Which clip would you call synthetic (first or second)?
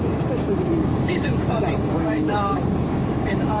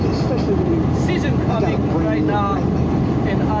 first